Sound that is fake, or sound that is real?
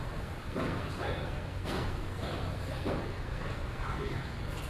fake